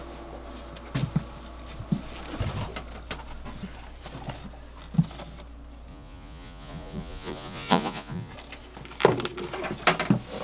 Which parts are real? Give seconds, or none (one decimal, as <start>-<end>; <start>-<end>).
0.0-5.9; 8.3-10.4